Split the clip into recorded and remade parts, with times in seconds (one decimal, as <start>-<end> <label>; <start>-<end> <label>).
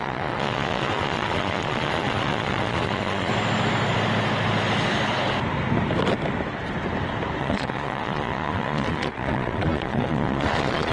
0.0-3.3 remade; 3.3-7.4 recorded; 7.4-10.9 remade